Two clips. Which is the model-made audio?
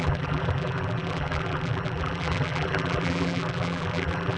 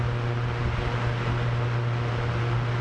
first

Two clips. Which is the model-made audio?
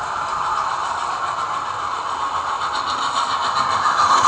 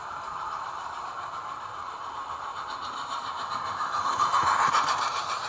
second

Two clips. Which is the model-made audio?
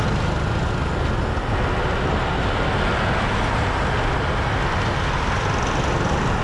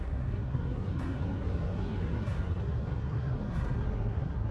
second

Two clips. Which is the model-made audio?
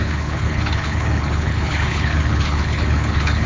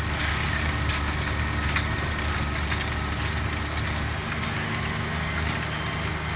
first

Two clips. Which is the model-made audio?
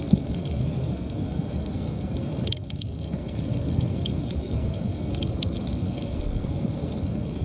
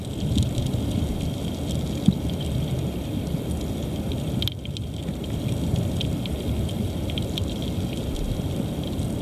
first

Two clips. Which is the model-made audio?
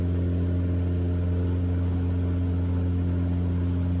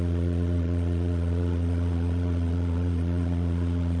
second